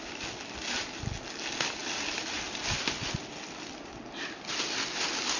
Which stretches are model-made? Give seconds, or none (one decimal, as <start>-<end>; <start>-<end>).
none